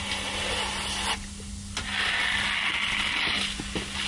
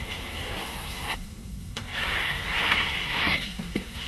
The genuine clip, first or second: first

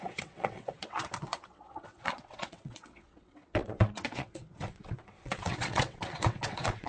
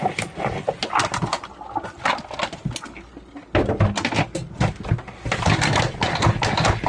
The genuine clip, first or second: second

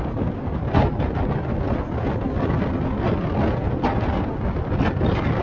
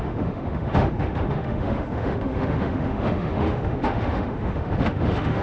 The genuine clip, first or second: first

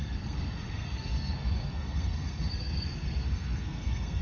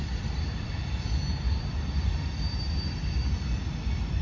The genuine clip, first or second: second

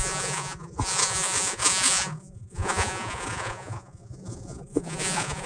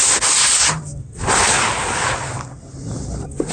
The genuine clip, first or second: second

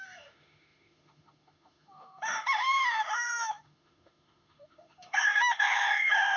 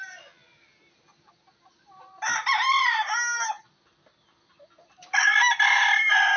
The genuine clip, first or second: second